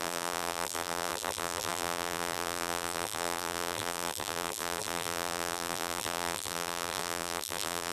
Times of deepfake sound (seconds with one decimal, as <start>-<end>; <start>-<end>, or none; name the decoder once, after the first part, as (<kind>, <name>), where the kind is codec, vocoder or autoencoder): 0.0-7.9 (vocoder, BigVGAN v2)